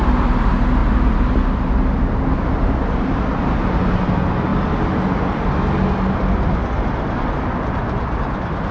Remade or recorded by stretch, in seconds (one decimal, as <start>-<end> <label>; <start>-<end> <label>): 0.0-8.7 recorded